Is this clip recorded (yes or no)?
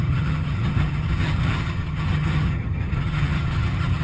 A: no